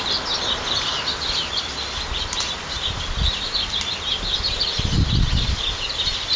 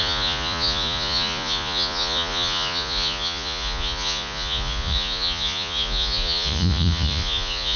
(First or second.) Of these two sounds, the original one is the first